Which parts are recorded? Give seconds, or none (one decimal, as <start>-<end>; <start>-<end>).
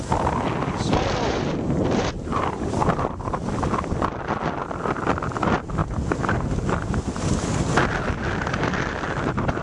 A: 0.0-0.9; 3.5-5.8; 6.6-9.6